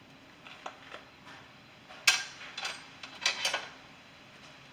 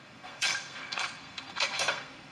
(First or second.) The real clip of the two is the first